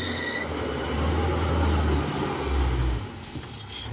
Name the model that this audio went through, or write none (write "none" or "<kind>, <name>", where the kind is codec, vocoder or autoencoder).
none